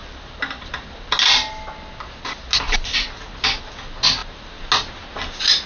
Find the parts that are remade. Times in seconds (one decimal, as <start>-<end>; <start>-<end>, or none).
none